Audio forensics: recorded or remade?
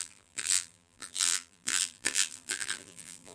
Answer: remade